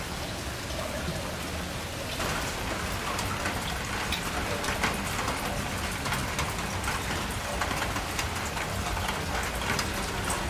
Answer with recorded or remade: recorded